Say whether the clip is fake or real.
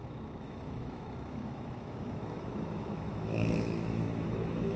fake